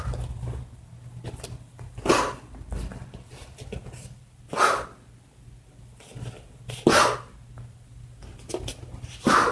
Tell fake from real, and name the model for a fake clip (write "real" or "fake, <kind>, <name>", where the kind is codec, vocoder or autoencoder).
real